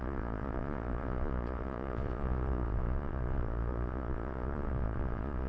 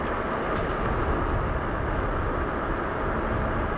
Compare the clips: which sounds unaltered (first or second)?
second